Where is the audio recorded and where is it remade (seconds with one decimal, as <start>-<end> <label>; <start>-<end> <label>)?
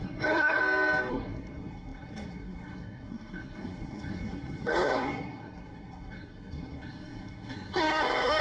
0.0-0.6 remade; 0.6-1.1 recorded; 1.1-8.4 remade